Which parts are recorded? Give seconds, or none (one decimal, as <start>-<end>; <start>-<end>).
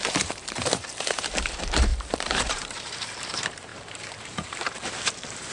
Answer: none